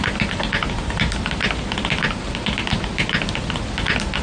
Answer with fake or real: real